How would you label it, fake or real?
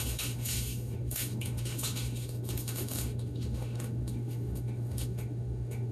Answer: fake